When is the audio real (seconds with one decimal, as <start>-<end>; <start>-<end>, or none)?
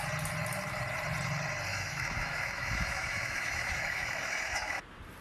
0.0-1.7; 4.8-5.2